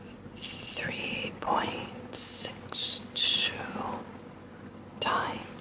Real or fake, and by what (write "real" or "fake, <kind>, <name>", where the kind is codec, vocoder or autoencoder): real